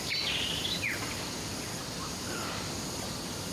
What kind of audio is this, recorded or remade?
recorded